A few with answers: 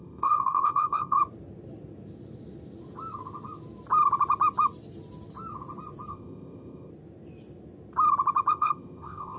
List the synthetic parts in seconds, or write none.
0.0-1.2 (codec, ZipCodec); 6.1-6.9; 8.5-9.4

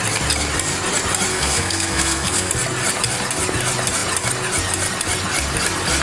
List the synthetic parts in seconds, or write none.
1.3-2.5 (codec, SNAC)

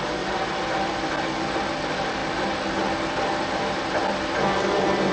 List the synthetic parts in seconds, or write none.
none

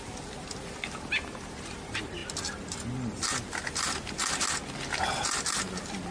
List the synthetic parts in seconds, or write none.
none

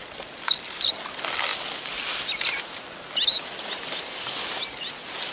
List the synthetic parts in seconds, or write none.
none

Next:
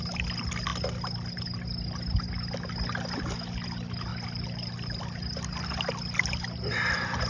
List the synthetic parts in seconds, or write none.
none

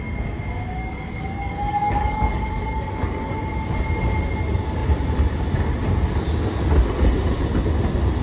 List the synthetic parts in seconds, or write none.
0.8-3.4 (codec, DAC)

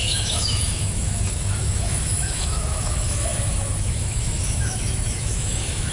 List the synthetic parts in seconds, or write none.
0.0-5.9 (autoencoder, DAC-VAE)